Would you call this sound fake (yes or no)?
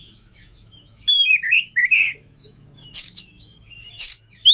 yes